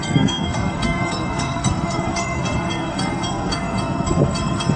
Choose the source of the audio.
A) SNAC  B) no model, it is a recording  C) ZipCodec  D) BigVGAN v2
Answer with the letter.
A